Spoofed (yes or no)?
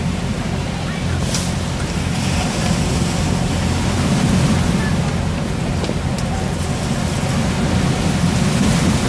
no